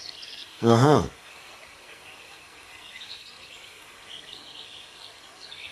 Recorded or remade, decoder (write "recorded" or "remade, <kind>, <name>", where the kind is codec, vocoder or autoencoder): remade, codec, SNAC